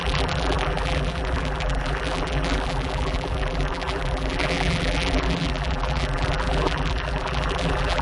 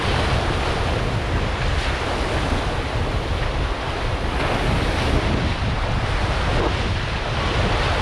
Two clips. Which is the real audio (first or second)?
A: second